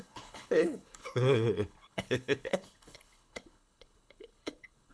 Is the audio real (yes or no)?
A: no